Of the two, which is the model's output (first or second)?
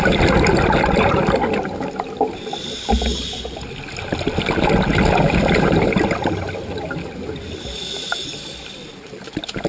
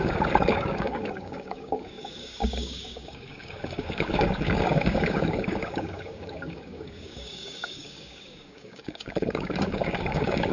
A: second